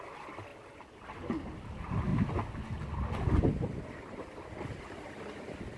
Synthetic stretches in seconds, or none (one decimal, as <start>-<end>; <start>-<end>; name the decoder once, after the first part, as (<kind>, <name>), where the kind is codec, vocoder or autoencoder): none

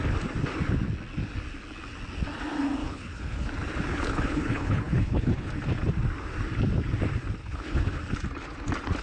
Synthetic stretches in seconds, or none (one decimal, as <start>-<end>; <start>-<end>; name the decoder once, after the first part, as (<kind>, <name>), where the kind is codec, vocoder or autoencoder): 2.8-3.5 (codec, HILCodec); 3.9-5.5; 7.4-8.0

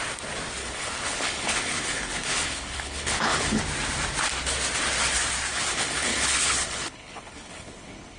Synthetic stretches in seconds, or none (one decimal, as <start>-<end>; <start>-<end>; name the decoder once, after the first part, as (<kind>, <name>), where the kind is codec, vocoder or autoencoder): 0.6-3.6 (codec, HILCodec); 5.5-8.2

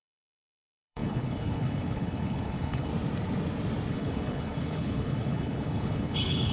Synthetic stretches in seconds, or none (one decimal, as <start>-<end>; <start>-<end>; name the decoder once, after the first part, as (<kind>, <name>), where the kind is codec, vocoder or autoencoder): 0.0-2.9 (codec, HILCodec); 3.9-6.5